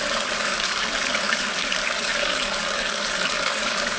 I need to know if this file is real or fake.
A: fake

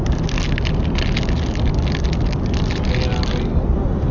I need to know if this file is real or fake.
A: real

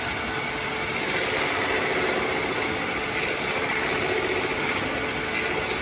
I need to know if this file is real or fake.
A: real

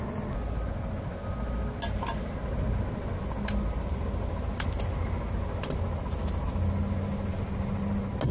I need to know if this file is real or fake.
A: real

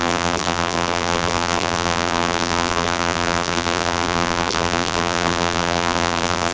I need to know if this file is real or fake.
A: fake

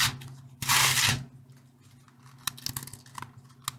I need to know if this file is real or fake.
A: real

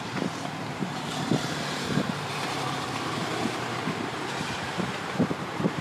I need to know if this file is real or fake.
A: fake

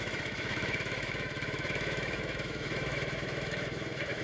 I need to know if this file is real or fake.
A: fake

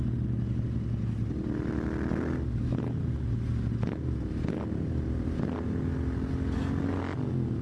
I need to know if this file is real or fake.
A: real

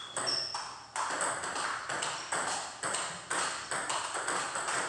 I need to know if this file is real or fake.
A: real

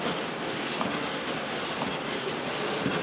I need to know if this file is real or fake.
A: real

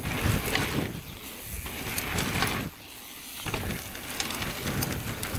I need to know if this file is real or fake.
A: real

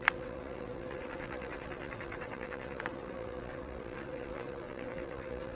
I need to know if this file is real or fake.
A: fake